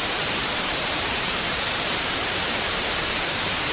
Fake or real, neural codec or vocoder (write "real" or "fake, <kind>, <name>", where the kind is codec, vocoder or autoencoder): fake, vocoder, BigVGAN v2